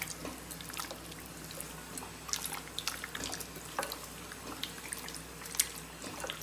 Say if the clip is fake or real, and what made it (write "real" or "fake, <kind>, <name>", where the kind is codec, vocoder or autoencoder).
real